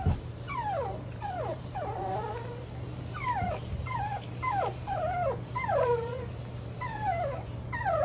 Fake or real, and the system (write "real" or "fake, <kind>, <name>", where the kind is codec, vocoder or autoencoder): fake, vocoder, BigVGAN v2